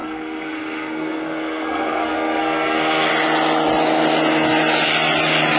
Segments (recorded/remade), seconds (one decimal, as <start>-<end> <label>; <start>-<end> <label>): 0.0-3.1 remade; 3.1-5.6 recorded